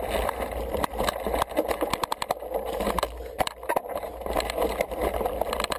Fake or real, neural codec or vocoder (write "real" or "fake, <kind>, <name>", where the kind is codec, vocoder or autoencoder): real